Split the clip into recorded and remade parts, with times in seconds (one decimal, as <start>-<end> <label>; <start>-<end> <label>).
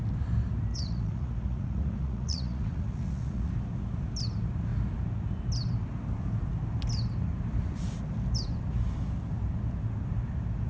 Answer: 0.0-0.7 recorded; 0.7-3.5 remade; 3.5-10.7 recorded